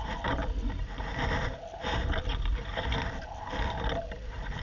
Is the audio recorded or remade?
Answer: recorded